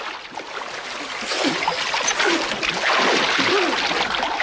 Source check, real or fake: real